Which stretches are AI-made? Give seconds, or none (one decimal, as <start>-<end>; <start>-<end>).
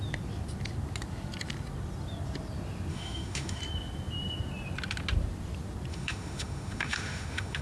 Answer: 2.9-3.6; 5.9-7.6